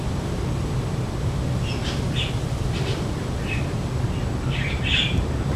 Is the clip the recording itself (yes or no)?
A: no